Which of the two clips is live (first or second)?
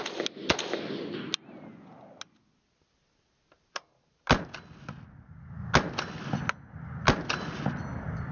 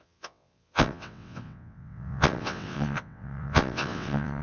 first